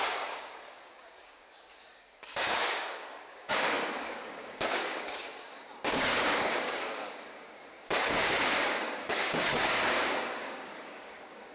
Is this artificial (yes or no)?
yes